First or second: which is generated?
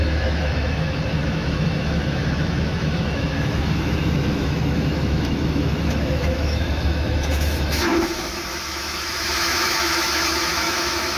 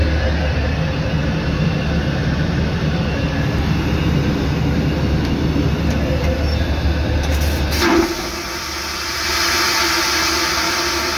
first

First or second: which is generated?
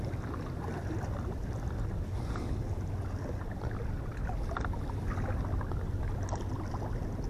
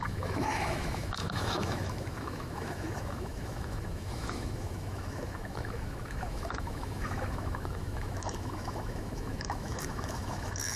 second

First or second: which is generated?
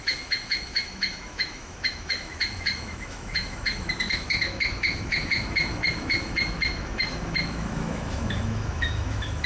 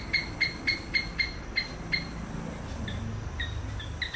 first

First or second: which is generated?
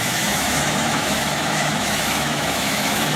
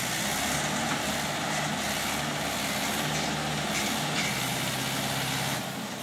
first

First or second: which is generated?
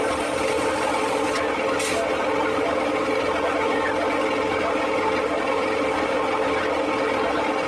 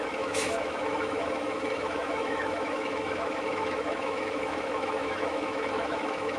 second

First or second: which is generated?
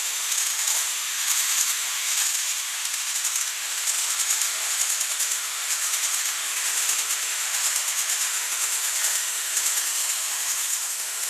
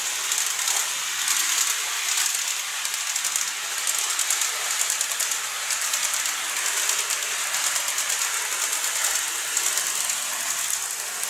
first